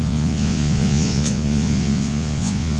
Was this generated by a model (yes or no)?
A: yes